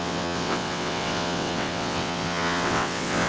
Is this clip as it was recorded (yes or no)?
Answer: no